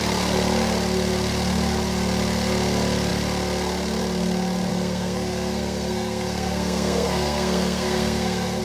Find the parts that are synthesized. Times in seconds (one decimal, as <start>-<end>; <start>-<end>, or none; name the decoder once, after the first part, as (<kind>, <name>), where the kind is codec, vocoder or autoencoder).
4.7-8.6 (codec, SNAC)